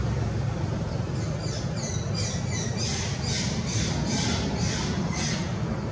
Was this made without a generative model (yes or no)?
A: yes